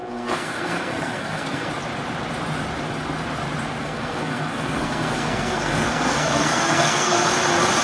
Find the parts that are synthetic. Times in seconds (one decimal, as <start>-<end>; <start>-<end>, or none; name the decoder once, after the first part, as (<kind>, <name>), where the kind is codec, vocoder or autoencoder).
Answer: 0.0-1.7 (codec, SNAC); 3.8-7.3

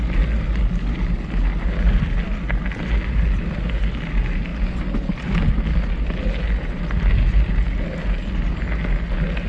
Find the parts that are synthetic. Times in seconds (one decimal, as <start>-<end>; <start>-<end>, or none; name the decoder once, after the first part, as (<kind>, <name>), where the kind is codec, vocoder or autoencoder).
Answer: none

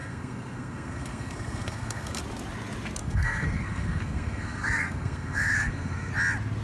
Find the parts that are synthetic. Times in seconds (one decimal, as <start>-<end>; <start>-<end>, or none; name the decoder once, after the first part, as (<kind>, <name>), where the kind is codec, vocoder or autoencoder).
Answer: 0.0-2.2 (codec, SNAC); 3.0-6.1

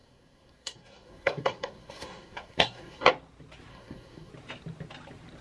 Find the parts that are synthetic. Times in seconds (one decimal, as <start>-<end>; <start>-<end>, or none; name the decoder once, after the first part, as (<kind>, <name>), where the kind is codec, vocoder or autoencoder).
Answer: 0.0-3.1 (codec, SNAC); 3.7-4.3

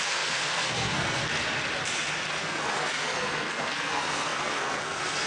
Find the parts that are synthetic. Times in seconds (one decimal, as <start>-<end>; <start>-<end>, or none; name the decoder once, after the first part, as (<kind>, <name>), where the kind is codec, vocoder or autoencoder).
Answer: 0.0-1.2 (codec, SNAC); 2.4-5.3

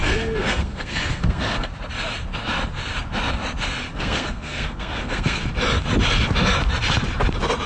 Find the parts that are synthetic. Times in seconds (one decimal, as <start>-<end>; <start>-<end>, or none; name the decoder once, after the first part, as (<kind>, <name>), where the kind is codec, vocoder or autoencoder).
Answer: 0.0-1.7 (codec, SNAC); 3.9-5.4

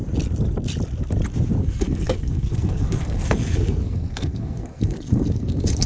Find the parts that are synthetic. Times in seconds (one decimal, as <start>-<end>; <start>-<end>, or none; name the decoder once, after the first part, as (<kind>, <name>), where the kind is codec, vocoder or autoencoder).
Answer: 1.6-5.9 (codec, SNAC)